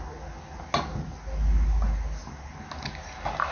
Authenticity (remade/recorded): recorded